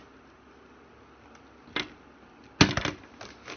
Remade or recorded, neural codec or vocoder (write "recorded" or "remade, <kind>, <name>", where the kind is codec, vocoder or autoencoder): recorded